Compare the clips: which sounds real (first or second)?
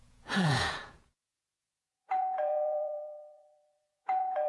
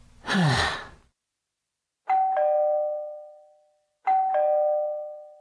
second